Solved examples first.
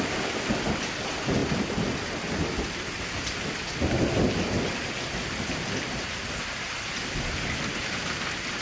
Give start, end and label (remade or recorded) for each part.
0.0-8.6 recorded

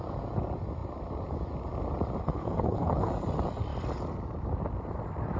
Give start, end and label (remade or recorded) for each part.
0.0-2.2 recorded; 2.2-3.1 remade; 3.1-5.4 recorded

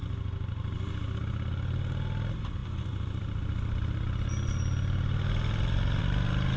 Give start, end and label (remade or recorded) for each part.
0.0-6.6 recorded